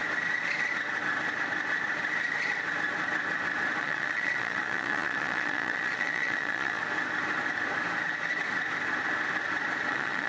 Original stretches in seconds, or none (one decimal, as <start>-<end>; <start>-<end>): 0.0-3.8; 6.8-9.9